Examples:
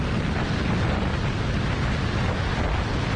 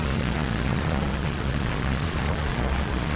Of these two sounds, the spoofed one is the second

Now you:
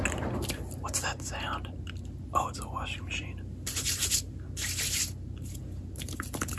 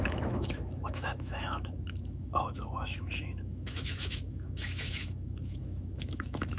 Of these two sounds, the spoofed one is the second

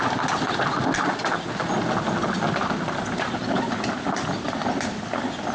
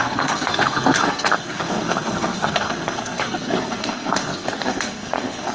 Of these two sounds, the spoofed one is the second